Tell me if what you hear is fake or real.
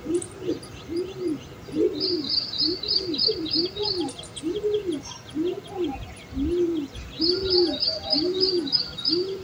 real